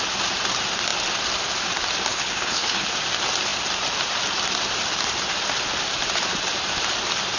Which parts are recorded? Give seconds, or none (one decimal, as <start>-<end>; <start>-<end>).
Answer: 0.0-2.1; 2.9-7.4